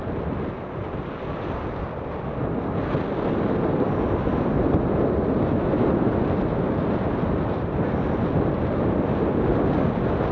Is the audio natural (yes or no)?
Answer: yes